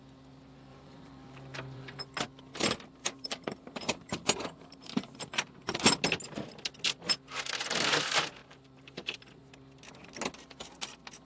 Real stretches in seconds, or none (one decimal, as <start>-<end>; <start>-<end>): 0.0-0.7; 2.0-3.0; 5.8-8.4; 9.3-11.3